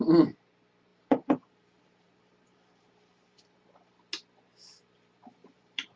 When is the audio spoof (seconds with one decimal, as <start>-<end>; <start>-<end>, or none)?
0.9-4.0; 5.4-6.0